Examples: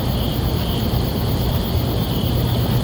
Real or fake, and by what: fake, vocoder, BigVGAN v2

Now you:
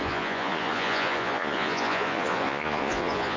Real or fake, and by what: fake, vocoder, Vocos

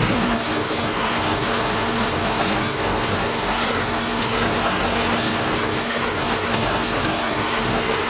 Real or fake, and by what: fake, codec, SNAC